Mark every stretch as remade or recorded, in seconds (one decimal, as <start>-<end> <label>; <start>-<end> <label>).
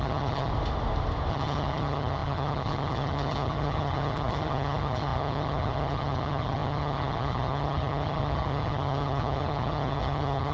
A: 0.0-0.5 remade; 0.5-1.3 recorded; 1.3-10.5 remade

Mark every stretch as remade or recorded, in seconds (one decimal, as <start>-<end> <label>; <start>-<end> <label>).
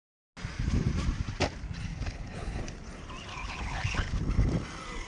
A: 0.0-1.9 recorded; 1.9-2.6 remade; 2.6-3.3 recorded; 3.3-4.2 remade; 4.2-5.1 recorded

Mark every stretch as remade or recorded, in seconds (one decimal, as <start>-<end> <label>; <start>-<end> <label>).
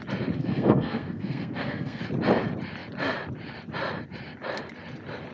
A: 0.0-0.4 recorded; 0.4-2.0 remade; 2.0-5.3 recorded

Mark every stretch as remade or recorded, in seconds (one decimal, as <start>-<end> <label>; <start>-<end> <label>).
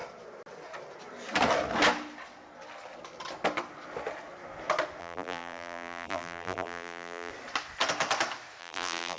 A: 0.0-5.0 recorded; 5.0-7.3 remade; 7.3-8.6 recorded; 8.6-9.2 remade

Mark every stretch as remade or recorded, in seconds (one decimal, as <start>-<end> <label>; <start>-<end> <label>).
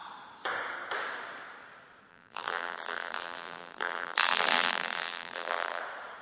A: 0.0-2.1 recorded; 2.1-5.8 remade; 5.8-6.2 recorded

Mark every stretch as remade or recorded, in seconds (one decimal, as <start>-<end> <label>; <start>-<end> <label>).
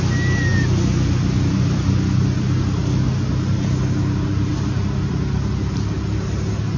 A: 0.0-6.8 recorded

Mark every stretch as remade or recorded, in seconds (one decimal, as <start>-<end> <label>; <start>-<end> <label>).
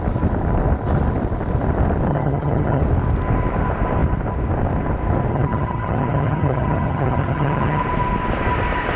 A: 0.0-2.1 recorded; 2.1-2.8 remade; 2.8-5.3 recorded; 5.3-7.8 remade; 7.8-9.0 recorded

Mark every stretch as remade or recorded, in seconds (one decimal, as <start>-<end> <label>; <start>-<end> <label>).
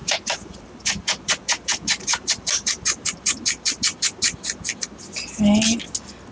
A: 0.0-3.8 remade; 3.8-6.3 recorded